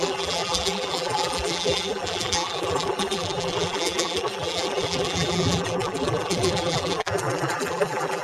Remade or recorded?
remade